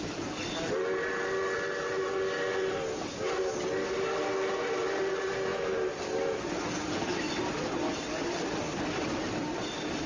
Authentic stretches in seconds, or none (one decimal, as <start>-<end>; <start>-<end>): 0.0-10.1